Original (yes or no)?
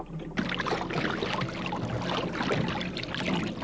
yes